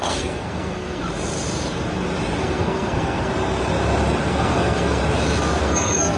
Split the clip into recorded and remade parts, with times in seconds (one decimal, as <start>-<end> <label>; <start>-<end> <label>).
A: 0.0-1.0 remade; 1.0-2.4 recorded; 2.4-3.3 remade; 3.3-4.3 recorded; 4.3-5.0 remade; 5.0-5.6 recorded; 5.6-6.2 remade